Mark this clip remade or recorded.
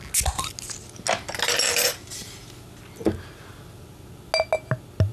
recorded